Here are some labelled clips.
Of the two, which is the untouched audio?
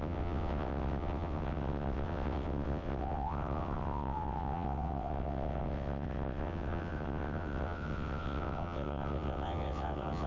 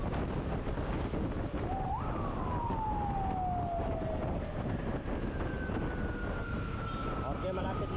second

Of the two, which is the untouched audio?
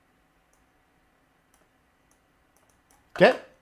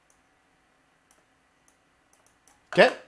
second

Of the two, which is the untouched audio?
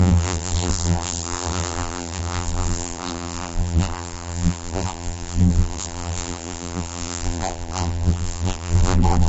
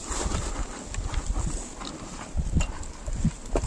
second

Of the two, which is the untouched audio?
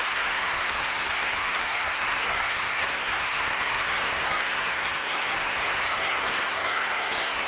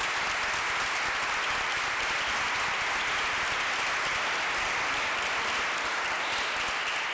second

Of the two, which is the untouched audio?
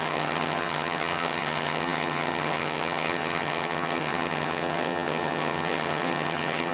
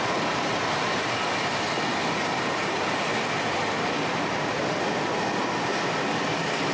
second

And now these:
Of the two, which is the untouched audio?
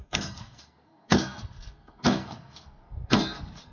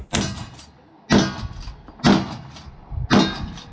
second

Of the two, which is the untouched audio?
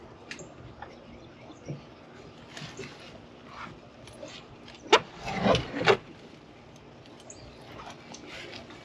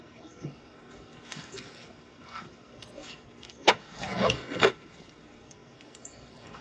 first